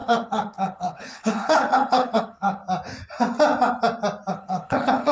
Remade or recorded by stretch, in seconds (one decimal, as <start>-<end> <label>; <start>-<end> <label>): 0.0-2.6 remade; 2.6-4.3 recorded; 4.3-5.1 remade